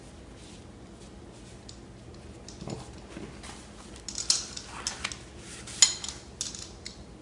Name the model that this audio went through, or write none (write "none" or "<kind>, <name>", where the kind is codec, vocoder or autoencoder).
none